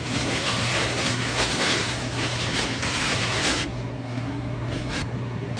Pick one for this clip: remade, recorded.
remade